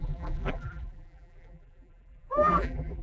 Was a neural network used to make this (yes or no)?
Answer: yes